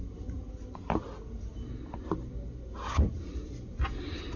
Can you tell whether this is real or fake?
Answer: real